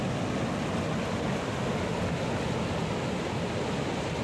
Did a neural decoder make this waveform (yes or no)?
no